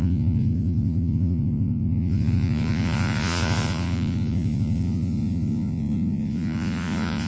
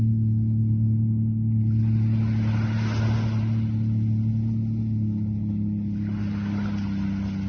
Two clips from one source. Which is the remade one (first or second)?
first